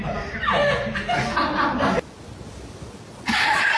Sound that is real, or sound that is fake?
real